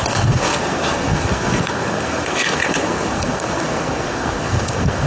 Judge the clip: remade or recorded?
remade